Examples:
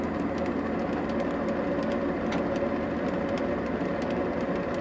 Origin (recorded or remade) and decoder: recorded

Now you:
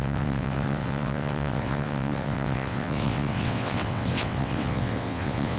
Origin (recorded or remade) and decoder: remade, vocoder, WaveNeXt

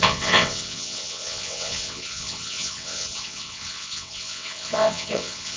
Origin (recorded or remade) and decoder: remade, vocoder, WaveNeXt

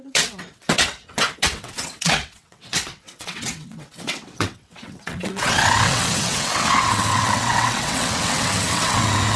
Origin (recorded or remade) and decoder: remade, vocoder, WaveNeXt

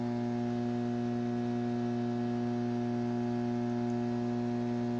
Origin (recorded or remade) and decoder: recorded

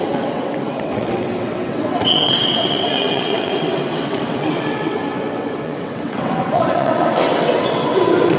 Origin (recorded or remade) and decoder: remade, vocoder, WaveNeXt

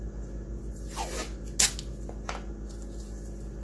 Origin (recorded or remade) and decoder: recorded